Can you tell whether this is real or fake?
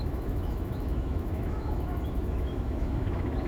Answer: fake